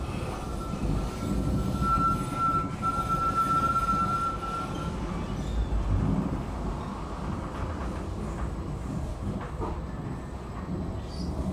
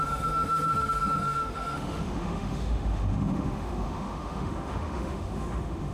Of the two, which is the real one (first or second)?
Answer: first